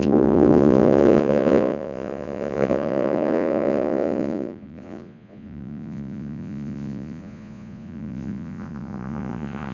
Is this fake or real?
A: fake